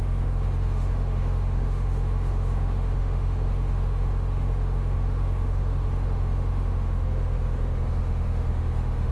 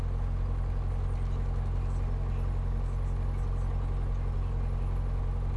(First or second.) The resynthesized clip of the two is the first